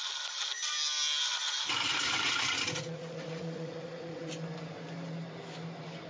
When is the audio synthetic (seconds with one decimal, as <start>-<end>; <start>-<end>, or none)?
1.9-4.3